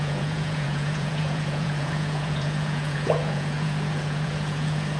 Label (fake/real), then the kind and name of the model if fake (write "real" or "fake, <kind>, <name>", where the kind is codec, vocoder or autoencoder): fake, vocoder, Vocos